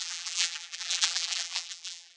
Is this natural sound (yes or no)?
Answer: no